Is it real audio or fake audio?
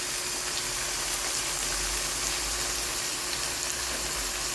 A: real